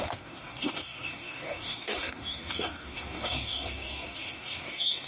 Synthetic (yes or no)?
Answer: yes